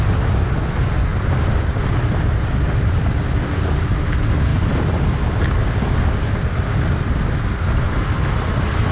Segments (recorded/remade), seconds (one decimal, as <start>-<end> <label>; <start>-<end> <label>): 0.0-1.1 recorded; 1.1-3.0 remade; 3.0-4.5 recorded; 4.5-5.2 remade; 5.2-8.9 recorded